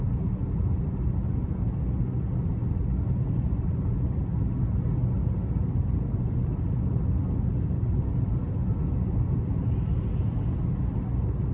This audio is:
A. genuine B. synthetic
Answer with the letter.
A